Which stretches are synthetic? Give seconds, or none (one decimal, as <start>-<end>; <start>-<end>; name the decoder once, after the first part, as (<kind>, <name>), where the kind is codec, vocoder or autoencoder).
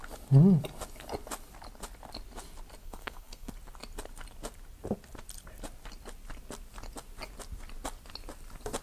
2.8-3.5 (codec, SNAC)